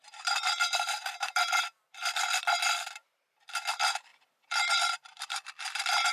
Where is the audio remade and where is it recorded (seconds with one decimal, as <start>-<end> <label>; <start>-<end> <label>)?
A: 0.0-6.1 remade